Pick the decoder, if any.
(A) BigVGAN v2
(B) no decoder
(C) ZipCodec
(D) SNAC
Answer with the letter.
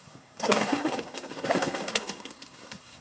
D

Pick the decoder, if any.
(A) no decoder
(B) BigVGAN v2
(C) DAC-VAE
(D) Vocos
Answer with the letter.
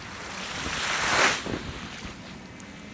A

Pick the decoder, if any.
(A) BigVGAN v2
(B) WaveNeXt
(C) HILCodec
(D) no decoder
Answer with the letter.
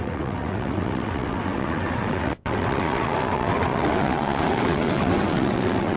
B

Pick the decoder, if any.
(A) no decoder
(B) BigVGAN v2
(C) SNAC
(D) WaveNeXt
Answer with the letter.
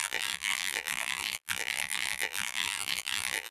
B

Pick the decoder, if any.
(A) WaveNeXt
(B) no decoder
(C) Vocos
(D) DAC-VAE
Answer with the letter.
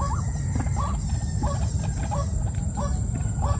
B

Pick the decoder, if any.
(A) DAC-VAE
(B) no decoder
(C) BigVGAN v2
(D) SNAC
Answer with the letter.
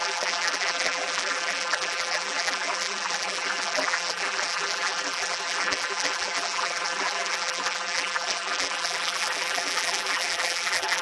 C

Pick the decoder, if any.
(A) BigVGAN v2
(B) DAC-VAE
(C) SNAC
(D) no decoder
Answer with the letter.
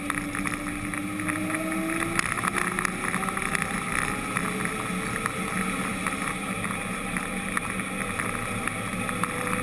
D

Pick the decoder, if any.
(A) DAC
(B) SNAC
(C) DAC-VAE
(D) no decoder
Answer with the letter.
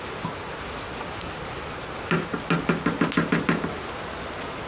D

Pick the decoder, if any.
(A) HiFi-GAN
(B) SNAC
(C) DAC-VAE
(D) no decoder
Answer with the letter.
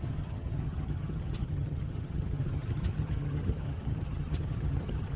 A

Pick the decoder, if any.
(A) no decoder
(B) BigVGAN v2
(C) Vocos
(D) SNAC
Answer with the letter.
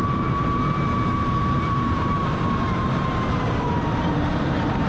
B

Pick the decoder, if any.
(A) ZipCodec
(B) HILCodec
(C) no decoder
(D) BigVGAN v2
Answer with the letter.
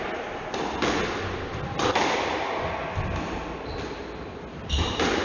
C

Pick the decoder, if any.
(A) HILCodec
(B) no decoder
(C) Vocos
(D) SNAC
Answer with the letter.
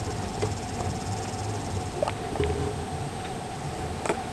B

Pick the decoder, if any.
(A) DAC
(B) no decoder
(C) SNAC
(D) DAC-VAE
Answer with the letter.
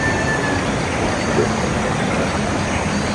B